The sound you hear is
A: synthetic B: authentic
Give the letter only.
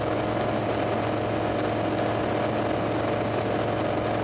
B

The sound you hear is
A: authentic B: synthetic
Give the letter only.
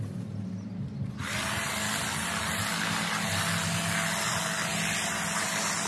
A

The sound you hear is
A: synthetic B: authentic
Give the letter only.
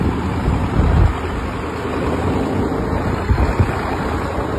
B